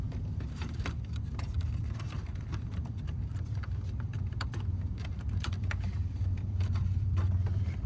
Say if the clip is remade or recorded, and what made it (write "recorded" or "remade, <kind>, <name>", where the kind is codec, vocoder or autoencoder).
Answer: remade, vocoder, BigVGAN v2